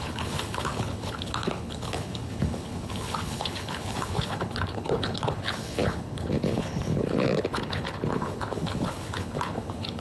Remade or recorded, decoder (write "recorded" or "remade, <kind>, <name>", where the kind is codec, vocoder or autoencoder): remade, codec, HILCodec